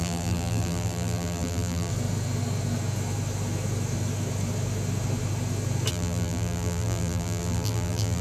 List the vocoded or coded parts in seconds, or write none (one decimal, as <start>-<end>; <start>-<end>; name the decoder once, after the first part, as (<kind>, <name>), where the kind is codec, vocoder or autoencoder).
0.0-1.9 (vocoder, BigVGAN v2); 5.9-8.2